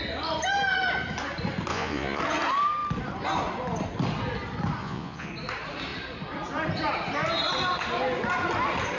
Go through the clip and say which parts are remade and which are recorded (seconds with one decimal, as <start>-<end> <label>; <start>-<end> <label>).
0.0-1.7 recorded; 1.7-2.2 remade; 2.2-4.8 recorded; 4.8-5.3 remade; 5.3-9.0 recorded